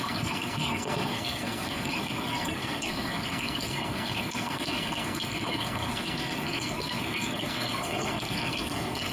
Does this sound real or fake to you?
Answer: fake